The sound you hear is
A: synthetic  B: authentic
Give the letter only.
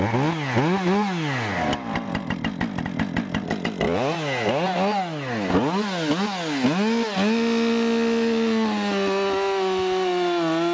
B